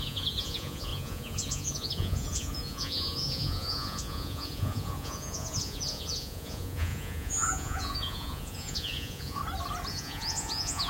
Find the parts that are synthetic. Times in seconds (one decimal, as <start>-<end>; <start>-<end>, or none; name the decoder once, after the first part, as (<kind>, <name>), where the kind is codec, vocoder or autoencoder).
0.0-9.4 (vocoder, Vocos); 9.9-10.9